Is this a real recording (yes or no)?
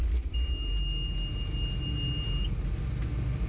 yes